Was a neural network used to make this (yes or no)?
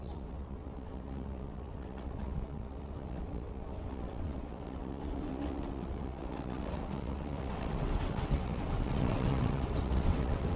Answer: yes